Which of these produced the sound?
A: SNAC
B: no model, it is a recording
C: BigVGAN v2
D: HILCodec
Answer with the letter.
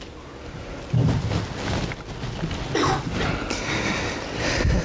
B